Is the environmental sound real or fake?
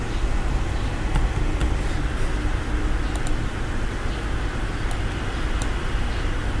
real